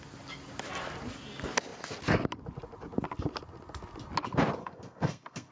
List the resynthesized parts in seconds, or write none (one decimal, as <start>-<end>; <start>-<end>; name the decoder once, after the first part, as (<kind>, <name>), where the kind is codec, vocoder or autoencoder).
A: 4.6-5.5 (codec, SNAC)